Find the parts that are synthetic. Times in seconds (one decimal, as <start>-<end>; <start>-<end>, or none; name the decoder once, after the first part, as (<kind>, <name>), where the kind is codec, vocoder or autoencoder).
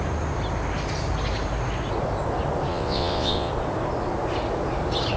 2.7-3.5 (vocoder, WaveNeXt)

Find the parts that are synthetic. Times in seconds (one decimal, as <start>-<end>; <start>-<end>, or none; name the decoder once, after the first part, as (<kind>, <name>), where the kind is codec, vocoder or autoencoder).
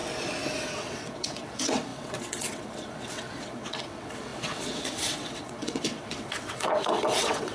0.7-7.5 (vocoder, WaveNeXt)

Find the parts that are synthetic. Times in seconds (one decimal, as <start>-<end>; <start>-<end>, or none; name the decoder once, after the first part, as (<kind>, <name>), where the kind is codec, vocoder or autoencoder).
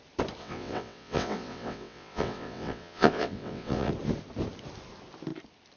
0.4-3.9 (vocoder, WaveNeXt)